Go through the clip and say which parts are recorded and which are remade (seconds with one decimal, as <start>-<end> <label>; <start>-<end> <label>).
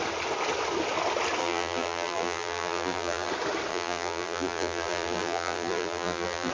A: 0.0-1.4 recorded; 1.4-3.3 remade; 3.3-3.7 recorded; 3.7-6.5 remade